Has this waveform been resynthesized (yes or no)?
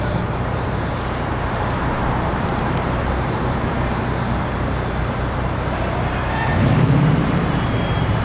yes